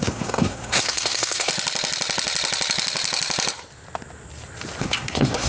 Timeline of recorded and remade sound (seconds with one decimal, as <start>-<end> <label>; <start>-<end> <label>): 0.0-1.5 remade; 1.5-4.8 recorded; 4.8-5.5 remade